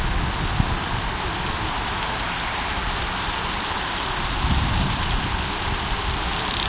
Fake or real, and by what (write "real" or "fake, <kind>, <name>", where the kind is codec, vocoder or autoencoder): real